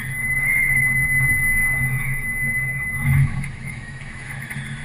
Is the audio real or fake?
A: fake